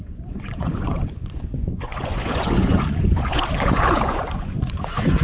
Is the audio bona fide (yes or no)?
no